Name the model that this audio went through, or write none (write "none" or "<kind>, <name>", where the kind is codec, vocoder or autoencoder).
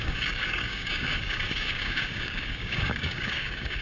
codec, DAC